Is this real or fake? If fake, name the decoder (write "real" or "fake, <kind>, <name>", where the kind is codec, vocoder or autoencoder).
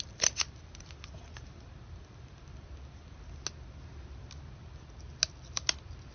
real